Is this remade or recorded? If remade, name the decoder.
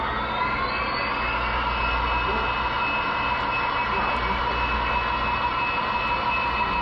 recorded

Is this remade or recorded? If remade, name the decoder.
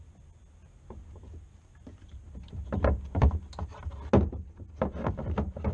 recorded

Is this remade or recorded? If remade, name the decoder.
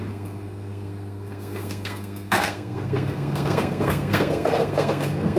remade, codec, SNAC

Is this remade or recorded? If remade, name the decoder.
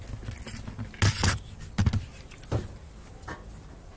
recorded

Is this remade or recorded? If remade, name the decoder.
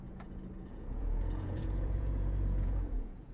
remade, vocoder, Vocos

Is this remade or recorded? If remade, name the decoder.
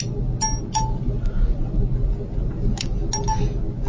recorded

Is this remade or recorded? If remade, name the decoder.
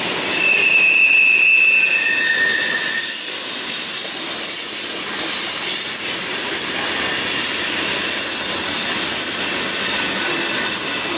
recorded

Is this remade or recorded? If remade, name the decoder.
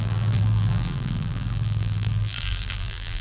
remade, vocoder, BigVGAN v2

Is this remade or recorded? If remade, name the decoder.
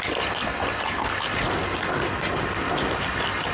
recorded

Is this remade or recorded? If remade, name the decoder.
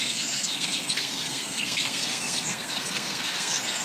remade, codec, SNAC